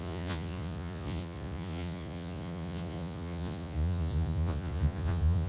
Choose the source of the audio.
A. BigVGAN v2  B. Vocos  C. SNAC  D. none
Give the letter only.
B